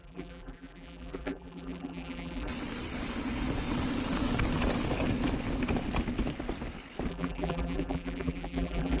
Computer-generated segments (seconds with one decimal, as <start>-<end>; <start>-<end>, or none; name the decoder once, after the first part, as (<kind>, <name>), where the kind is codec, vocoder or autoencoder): 0.0-2.5 (vocoder, BigVGAN v2); 7.1-9.0